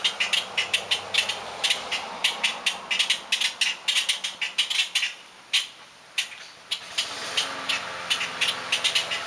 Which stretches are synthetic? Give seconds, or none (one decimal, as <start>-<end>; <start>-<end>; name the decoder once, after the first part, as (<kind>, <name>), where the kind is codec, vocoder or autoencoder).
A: none